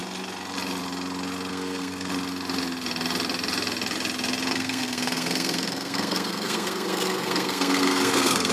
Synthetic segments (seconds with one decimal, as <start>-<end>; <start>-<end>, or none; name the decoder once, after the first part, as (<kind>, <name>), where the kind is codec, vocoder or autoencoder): 1.5-2.1 (codec, SNAC); 4.5-8.5